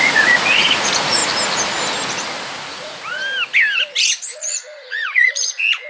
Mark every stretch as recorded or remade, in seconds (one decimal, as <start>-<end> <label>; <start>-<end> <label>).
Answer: 0.0-1.2 remade; 1.2-2.4 recorded; 2.4-3.2 remade; 3.2-4.0 recorded; 4.0-5.9 remade